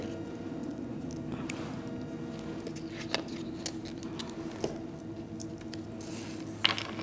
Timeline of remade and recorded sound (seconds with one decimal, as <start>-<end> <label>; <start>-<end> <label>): 0.0-0.6 recorded; 0.6-1.1 remade; 1.1-7.0 recorded